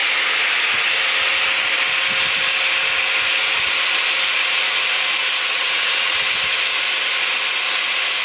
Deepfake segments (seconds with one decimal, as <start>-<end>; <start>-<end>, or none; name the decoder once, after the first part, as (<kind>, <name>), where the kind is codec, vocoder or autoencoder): 5.5-6.2 (vocoder, WaveNeXt)